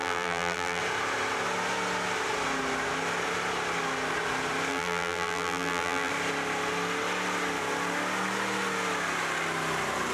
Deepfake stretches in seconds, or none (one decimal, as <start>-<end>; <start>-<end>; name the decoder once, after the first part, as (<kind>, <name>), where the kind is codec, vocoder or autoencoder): 0.0-0.8 (vocoder, BigVGAN v2); 4.7-6.1